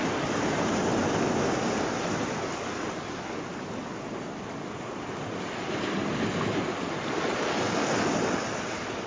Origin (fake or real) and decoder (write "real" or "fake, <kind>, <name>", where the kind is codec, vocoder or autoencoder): real